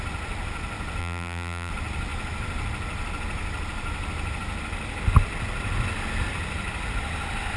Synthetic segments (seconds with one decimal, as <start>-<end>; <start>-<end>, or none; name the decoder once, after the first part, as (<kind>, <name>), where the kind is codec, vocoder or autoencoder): 1.0-1.7 (vocoder, BigVGAN v2)